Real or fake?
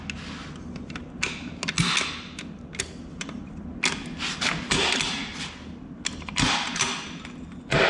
real